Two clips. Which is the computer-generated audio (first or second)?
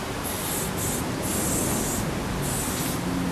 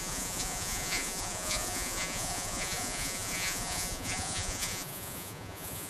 second